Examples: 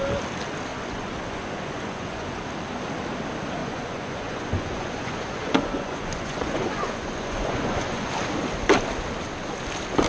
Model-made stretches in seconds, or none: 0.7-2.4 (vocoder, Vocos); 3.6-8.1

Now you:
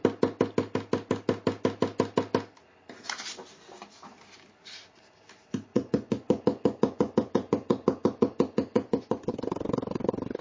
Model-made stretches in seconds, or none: 5.7-9.3 (vocoder, Vocos)

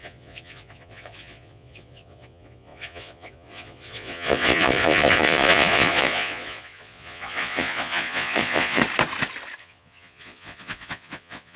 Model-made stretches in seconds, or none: 0.0-8.8 (vocoder, Vocos); 9.6-11.6